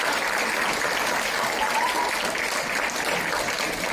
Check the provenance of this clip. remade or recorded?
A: recorded